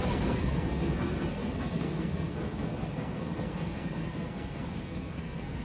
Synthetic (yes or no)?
yes